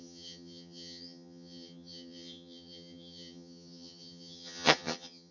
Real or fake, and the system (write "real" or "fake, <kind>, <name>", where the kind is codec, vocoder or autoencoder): fake, vocoder, HiFi-GAN